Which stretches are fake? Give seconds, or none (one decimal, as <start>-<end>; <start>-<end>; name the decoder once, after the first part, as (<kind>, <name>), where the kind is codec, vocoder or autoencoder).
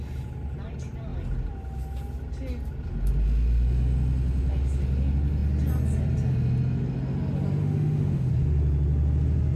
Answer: 7.6-8.3 (autoencoder, DAC-VAE)